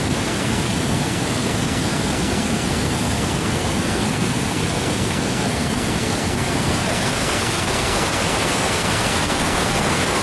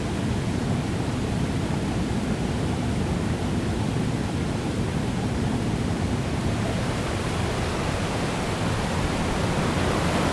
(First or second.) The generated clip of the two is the first